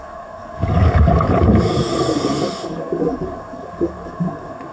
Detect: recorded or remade remade